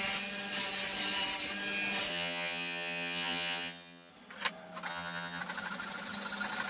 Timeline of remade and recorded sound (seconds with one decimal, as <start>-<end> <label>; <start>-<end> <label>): 0.0-2.1 recorded; 2.1-4.1 remade; 4.1-4.9 recorded; 4.9-5.4 remade; 5.4-6.7 recorded